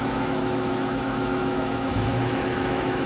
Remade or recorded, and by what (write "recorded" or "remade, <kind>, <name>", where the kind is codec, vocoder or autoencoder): remade, autoencoder, DAC-VAE